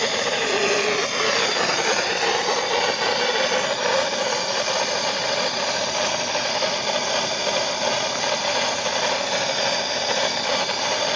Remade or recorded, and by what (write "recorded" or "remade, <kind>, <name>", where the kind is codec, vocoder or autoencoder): recorded